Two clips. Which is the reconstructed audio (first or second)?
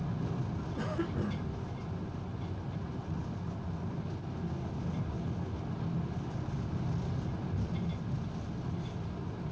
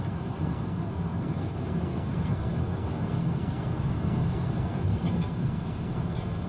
second